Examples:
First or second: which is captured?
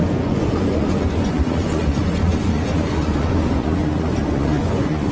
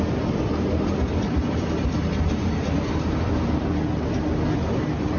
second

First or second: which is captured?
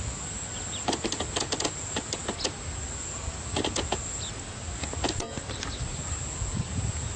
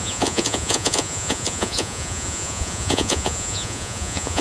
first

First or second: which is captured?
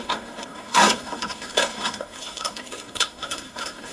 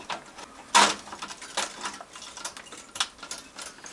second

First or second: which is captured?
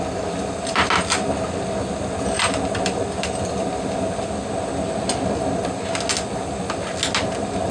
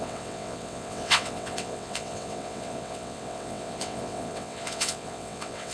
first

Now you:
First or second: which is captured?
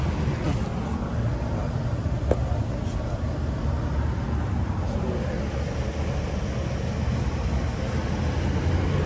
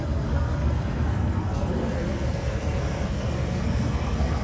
first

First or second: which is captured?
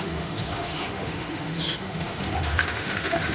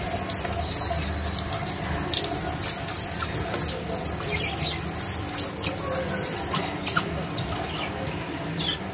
second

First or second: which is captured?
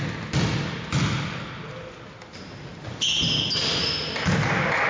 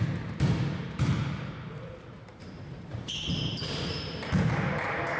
first